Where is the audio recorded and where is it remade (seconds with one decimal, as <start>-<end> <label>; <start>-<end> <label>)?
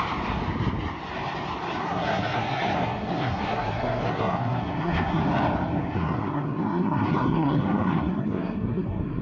0.0-1.8 recorded; 1.8-5.2 remade; 5.2-5.8 recorded; 5.8-9.2 remade